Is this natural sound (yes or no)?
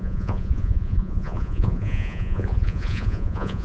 no